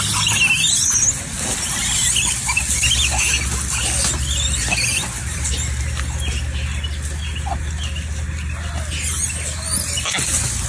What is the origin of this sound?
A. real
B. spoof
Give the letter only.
A